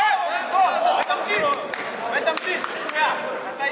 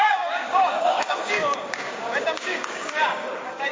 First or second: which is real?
first